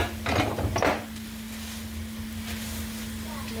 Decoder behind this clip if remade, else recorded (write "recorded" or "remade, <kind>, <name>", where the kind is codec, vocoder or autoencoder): recorded